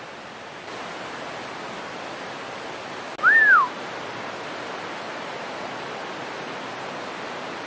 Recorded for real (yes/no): yes